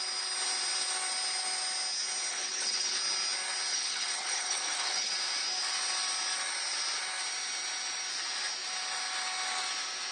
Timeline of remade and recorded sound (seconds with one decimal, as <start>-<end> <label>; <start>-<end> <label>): 0.0-2.3 recorded; 2.3-3.0 remade; 3.0-3.7 recorded; 3.7-5.1 remade; 5.1-10.1 recorded